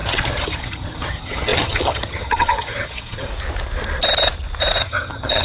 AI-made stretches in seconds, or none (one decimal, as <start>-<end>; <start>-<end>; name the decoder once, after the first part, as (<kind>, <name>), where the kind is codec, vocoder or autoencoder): 0.0-3.3 (vocoder, HiFi-GAN); 4.8-5.4

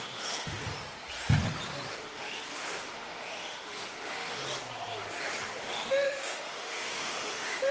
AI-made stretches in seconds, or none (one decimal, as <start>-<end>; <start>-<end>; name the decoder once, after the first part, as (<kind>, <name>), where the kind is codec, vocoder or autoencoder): 0.0-0.6 (autoencoder, DAC-VAE); 1.9-4.4; 5.6-7.7